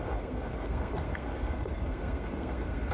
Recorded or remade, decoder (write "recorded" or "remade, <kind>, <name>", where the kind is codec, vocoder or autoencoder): remade, codec, SNAC